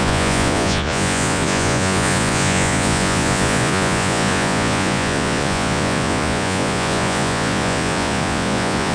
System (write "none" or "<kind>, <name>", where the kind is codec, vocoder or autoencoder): vocoder, Vocos